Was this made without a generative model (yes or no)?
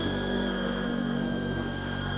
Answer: no